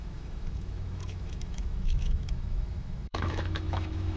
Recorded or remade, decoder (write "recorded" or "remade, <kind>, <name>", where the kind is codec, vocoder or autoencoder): remade, autoencoder, DAC-VAE